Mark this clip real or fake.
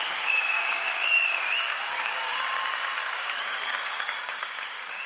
fake